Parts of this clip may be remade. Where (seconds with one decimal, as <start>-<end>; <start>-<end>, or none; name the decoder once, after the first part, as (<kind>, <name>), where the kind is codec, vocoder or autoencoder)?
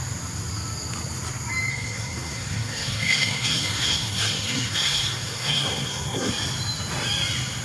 1.7-6.3 (codec, SNAC)